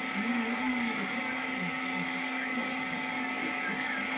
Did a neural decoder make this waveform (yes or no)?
yes